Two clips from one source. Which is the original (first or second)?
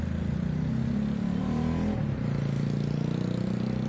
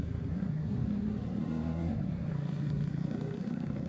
first